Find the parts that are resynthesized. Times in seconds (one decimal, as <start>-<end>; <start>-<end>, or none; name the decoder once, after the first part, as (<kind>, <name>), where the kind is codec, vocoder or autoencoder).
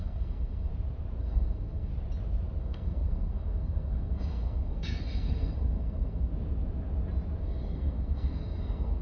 0.0-0.7 (codec, SNAC); 1.2-1.9; 2.6-6.3; 7.4-9.0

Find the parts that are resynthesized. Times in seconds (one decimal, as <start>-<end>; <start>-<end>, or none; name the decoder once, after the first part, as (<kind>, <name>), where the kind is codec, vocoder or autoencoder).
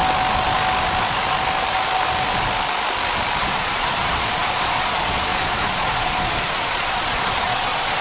3.4-8.0 (vocoder, Vocos)